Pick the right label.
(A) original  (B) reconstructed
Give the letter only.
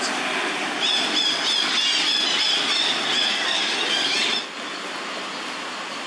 A